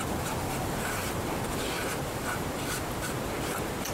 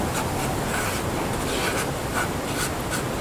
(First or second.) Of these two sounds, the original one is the second